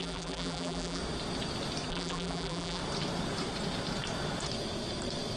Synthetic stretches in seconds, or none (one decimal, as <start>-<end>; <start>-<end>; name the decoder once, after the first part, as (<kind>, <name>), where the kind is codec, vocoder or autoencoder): 0.0-1.0 (vocoder, BigVGAN v2); 1.9-2.8